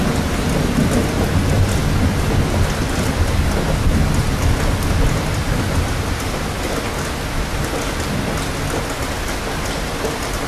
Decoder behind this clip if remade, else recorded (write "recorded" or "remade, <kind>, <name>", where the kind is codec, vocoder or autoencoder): recorded